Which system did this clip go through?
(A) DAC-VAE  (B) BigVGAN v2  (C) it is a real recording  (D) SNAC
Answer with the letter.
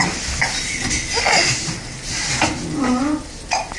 C